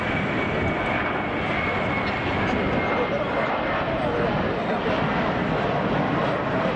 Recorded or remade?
recorded